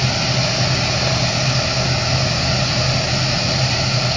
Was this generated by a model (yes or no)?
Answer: no